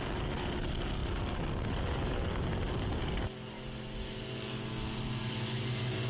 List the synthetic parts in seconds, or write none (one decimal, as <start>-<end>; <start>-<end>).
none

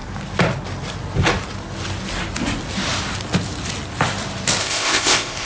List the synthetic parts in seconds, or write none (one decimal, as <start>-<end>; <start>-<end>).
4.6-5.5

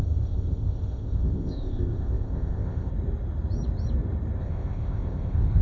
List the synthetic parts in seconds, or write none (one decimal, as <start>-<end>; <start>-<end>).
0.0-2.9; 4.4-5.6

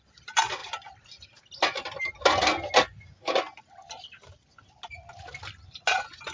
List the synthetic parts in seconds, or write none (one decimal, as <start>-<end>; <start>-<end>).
none

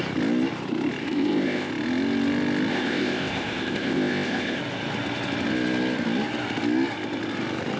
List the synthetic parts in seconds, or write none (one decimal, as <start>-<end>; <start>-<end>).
1.0-1.7; 2.7-4.6

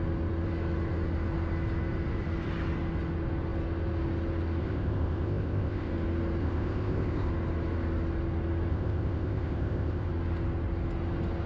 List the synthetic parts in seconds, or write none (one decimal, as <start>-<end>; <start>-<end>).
4.6-5.9; 6.4-7.3; 8.7-10.1

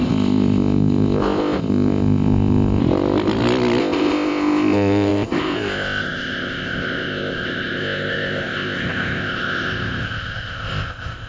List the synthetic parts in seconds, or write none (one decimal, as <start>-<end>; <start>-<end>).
0.0-2.8; 3.8-11.3